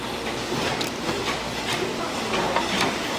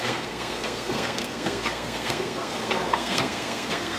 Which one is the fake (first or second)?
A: second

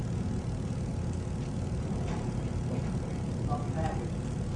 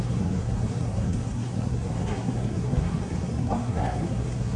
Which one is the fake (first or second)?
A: second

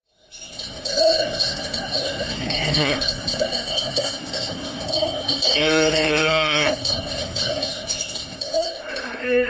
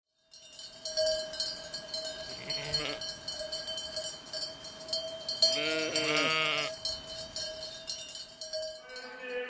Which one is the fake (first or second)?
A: first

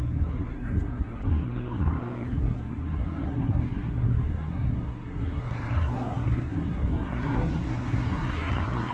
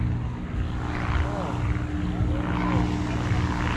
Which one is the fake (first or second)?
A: first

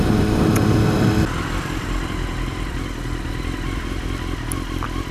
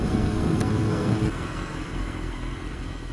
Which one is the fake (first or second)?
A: second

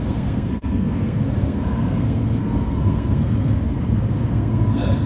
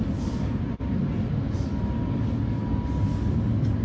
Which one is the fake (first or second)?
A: first